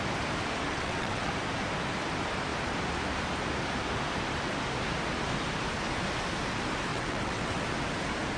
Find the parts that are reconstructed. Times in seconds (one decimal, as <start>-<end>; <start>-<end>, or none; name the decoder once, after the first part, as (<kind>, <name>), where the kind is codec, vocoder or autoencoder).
0.7-1.3 (vocoder, WaveNeXt); 6.9-7.6